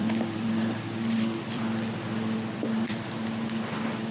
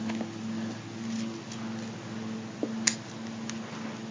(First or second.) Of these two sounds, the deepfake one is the first